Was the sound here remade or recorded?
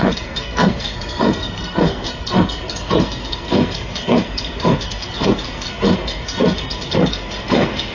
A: remade